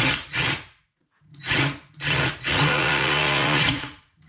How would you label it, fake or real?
fake